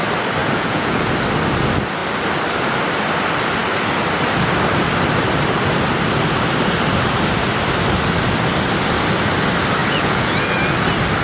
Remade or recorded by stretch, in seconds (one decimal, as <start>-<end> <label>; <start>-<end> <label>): 0.0-0.4 recorded; 0.4-1.1 remade; 1.1-9.8 recorded; 9.8-10.3 remade; 10.3-11.2 recorded